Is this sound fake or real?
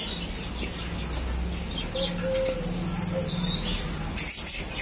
real